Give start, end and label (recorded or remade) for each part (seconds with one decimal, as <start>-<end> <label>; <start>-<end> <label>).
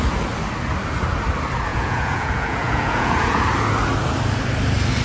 0.0-1.7 recorded; 1.7-3.4 remade; 3.4-5.0 recorded